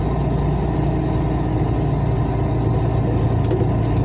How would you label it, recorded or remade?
recorded